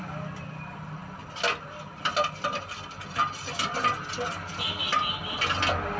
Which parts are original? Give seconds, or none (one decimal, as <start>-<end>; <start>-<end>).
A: 0.0-6.0